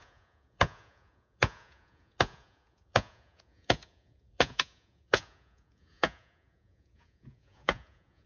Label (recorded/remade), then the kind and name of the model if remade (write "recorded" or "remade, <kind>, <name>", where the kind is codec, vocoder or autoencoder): remade, vocoder, Vocos